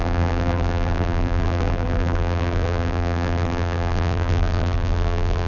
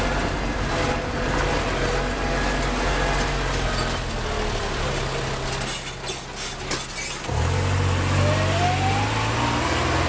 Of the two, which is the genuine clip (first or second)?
second